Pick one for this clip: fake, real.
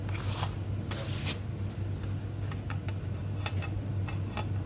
real